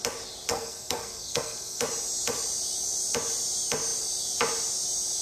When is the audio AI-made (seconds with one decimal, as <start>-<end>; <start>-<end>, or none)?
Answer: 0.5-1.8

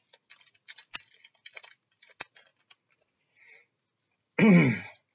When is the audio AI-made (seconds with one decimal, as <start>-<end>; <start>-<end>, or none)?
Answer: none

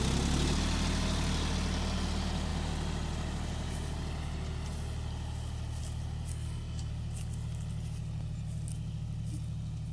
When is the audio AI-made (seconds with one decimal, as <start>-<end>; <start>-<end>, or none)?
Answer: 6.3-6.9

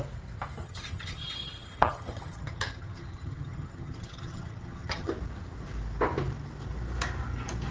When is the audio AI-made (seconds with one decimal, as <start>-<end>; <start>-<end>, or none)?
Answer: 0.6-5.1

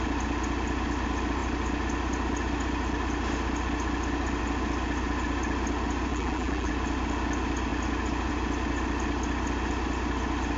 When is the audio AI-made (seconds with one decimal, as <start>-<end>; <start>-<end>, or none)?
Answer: 6.1-6.7

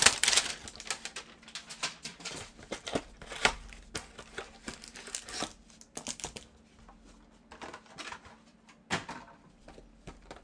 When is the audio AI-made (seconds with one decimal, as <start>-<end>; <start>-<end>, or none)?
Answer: 2.1-3.6

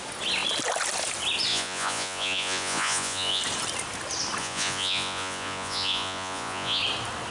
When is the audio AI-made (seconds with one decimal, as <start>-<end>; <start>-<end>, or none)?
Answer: 1.5-3.4; 4.4-6.8

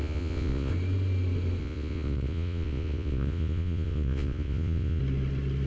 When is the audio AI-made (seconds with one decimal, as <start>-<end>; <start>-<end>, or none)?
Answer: 0.0-0.7; 1.6-5.0